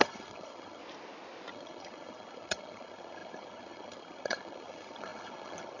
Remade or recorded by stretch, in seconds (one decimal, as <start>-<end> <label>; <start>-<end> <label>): 0.0-0.8 remade; 0.8-1.5 recorded; 1.5-5.8 remade